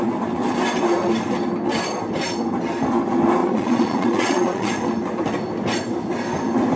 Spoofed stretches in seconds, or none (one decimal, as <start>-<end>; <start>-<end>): 3.4-4.7